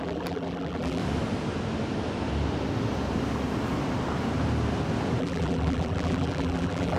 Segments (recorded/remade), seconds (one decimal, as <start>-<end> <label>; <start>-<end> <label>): 0.0-1.0 remade; 1.0-5.2 recorded; 5.2-7.0 remade